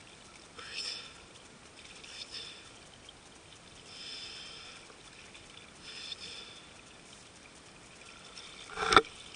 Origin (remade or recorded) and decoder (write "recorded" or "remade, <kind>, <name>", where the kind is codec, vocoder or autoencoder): recorded